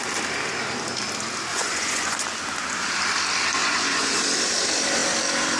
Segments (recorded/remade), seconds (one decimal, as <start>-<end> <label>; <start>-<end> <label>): 0.0-1.5 recorded; 1.5-2.2 remade; 2.2-3.6 recorded; 3.6-4.1 remade; 4.1-5.6 recorded

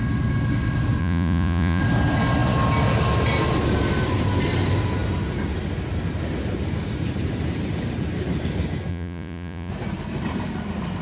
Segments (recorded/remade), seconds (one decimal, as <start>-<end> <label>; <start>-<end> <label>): 0.0-1.0 recorded; 1.0-1.8 remade; 1.8-8.9 recorded; 8.9-9.7 remade; 9.7-11.0 recorded

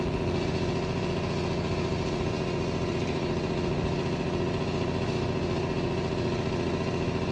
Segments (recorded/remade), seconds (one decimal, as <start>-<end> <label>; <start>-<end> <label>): 0.0-7.3 recorded

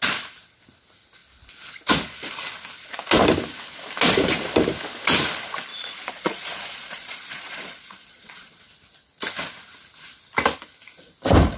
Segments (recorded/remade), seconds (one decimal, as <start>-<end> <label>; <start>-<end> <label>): 0.0-5.7 recorded; 5.7-8.6 remade; 8.6-11.6 recorded

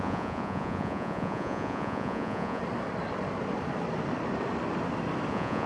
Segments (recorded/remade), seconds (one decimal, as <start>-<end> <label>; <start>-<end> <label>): 0.0-2.6 remade; 2.6-5.3 recorded; 5.3-5.7 remade